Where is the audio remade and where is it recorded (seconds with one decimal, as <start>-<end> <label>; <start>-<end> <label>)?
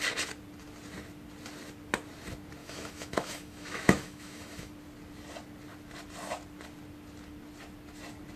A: 0.0-2.6 recorded; 2.6-4.7 remade; 4.7-8.4 recorded